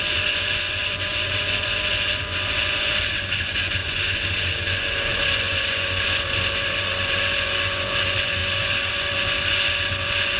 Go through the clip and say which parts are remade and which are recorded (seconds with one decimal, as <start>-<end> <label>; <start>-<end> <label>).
0.0-10.4 remade